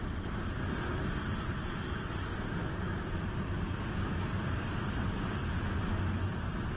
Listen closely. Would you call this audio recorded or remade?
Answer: recorded